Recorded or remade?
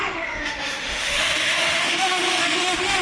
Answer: remade